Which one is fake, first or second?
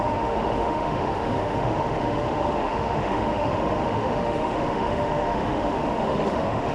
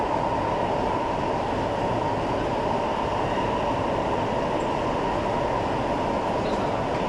first